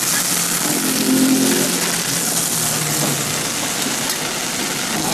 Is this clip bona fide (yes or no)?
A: yes